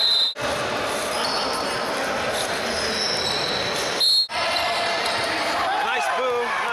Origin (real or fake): real